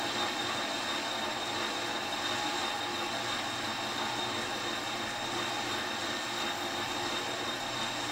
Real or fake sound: real